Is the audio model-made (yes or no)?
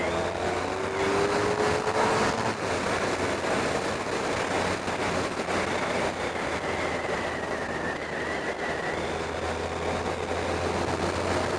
no